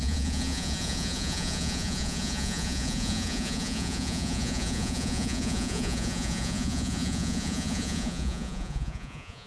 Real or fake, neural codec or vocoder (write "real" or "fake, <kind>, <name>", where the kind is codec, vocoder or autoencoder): fake, vocoder, Vocos